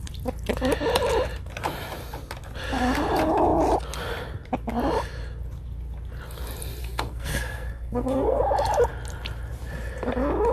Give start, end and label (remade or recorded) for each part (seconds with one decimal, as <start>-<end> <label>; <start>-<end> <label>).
0.0-6.8 recorded; 6.8-8.4 remade; 8.4-10.5 recorded